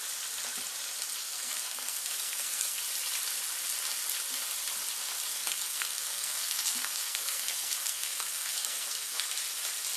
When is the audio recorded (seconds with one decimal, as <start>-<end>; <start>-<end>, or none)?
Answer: 0.0-1.2; 2.8-5.3; 9.3-10.0